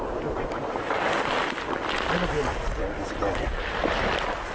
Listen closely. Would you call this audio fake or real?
real